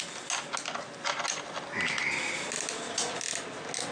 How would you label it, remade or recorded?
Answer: recorded